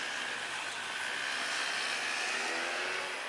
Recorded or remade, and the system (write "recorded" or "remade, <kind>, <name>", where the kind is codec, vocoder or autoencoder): recorded